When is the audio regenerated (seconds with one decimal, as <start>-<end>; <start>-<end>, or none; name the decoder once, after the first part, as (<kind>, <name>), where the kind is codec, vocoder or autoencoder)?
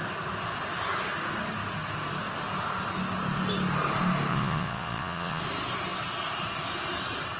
4.3-5.4 (vocoder, Vocos)